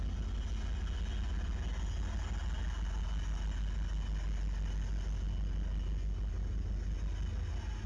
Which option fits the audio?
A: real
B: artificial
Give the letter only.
A